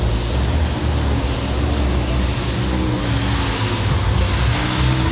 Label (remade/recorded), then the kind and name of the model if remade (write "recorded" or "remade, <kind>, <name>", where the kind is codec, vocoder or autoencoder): recorded